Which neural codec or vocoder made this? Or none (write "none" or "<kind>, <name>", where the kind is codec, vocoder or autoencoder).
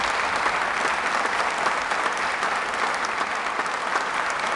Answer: none